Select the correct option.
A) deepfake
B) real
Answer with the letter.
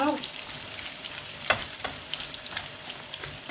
A